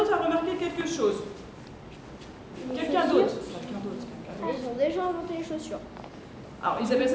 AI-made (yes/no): no